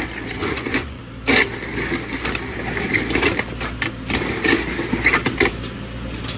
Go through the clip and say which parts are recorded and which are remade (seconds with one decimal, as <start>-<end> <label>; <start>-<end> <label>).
0.0-0.4 recorded; 0.4-1.0 remade; 1.0-6.4 recorded